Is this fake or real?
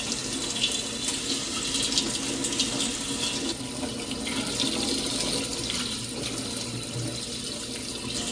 real